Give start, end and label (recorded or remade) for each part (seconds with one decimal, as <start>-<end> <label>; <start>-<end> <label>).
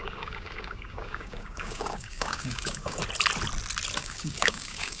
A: 0.0-3.0 remade; 3.0-4.0 recorded; 4.0-5.0 remade